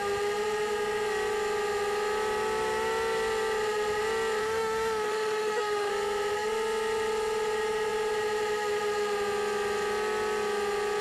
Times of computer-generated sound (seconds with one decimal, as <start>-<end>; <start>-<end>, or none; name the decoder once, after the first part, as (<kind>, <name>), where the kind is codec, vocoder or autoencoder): 4.4-5.9 (autoencoder, DAC-VAE)